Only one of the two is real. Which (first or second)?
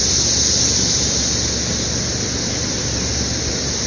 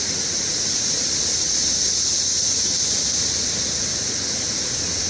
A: first